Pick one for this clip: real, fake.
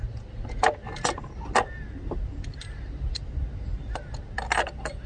real